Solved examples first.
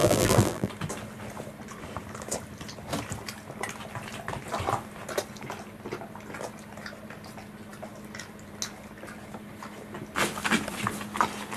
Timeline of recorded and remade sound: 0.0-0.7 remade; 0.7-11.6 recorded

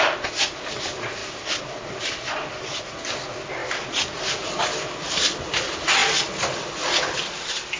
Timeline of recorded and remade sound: 0.0-7.8 recorded

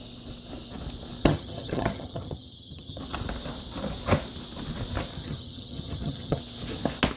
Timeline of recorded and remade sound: 0.0-1.2 recorded; 1.2-3.0 remade; 3.0-5.1 recorded; 5.1-6.4 remade; 6.4-7.2 recorded

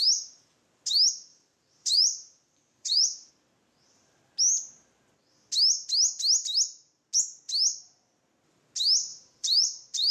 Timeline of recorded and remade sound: 0.0-1.3 recorded; 1.3-3.3 remade; 3.3-9.1 recorded; 9.1-10.1 remade

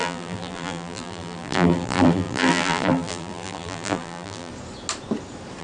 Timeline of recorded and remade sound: 0.0-4.5 remade; 4.5-5.6 recorded

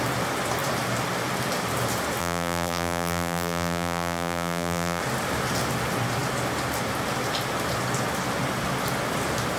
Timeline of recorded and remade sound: 0.0-2.2 recorded; 2.2-5.0 remade; 5.0-9.6 recorded

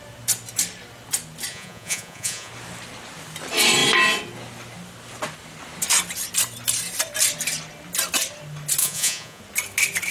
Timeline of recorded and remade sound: 0.0-1.5 recorded; 1.5-2.5 remade; 2.5-8.8 recorded; 8.8-9.4 remade; 9.4-10.1 recorded